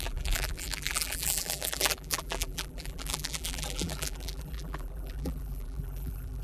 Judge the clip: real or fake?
fake